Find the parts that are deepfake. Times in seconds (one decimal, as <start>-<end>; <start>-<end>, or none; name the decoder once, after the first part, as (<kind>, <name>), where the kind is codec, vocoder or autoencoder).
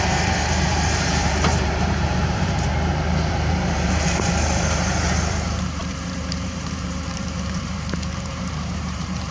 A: 0.0-2.7 (vocoder, BigVGAN v2); 3.3-9.3